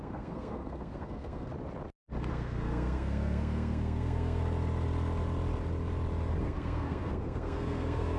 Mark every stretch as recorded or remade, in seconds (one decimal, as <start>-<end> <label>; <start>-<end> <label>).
0.0-1.5 remade; 1.5-2.3 recorded; 2.3-4.4 remade; 4.4-6.4 recorded; 6.4-8.2 remade